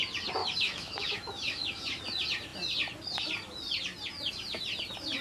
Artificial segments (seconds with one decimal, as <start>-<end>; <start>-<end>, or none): 0.4-2.0